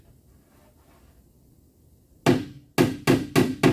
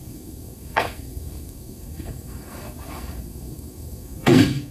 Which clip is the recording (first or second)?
first